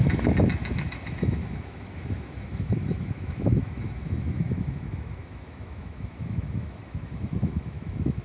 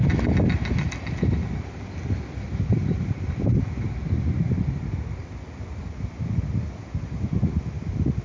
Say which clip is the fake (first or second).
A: first